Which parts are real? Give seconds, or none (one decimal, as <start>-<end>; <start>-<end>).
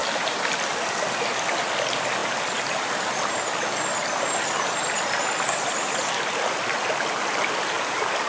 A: 0.0-8.3